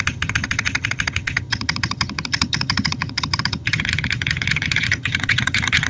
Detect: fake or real fake